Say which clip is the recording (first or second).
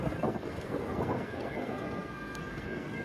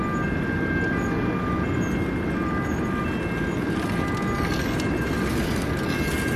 second